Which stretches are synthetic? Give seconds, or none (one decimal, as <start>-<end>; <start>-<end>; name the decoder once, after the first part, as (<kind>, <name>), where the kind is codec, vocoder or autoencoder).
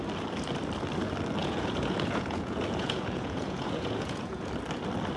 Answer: 1.4-4.5 (vocoder, Vocos)